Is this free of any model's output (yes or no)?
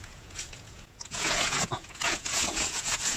no